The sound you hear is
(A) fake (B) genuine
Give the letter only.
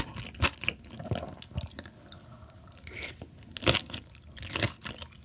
B